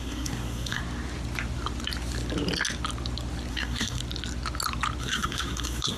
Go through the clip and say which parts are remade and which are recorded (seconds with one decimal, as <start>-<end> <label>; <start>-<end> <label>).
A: 0.0-0.8 remade; 0.8-3.5 recorded; 3.5-4.0 remade; 4.0-5.0 recorded; 5.0-6.0 remade

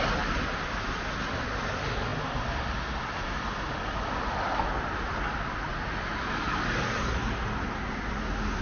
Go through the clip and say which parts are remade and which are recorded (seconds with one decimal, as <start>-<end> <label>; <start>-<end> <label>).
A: 0.0-8.6 recorded

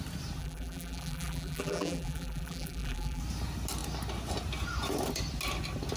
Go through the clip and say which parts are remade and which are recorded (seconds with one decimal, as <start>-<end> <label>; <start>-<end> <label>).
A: 0.0-0.4 recorded; 0.4-3.2 remade; 3.2-6.0 recorded

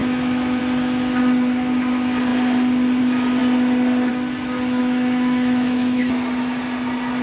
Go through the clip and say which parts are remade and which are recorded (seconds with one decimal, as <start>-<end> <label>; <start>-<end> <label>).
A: 0.0-0.6 remade; 0.6-4.8 recorded; 4.8-6.0 remade; 6.0-7.2 recorded

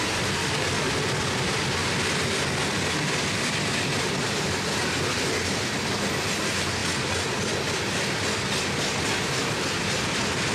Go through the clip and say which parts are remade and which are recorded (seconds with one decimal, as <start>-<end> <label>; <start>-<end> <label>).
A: 0.0-0.4 recorded; 0.4-0.9 remade; 0.9-10.5 recorded

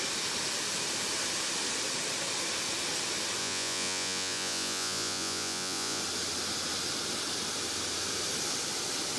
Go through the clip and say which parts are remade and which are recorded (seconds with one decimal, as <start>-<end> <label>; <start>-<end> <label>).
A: 0.0-3.4 recorded; 3.4-6.0 remade; 6.0-9.2 recorded

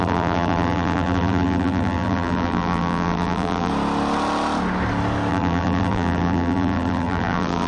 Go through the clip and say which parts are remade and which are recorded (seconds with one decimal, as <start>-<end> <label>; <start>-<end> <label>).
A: 0.0-3.7 remade; 3.7-5.3 recorded; 5.3-7.7 remade

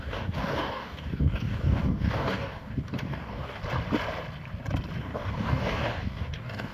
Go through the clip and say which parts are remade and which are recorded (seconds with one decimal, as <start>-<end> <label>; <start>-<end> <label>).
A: 0.0-3.6 remade; 3.6-5.0 recorded; 5.0-6.7 remade